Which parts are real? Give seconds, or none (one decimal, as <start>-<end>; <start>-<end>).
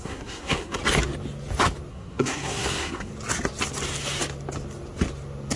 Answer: 0.8-1.9; 3.1-5.6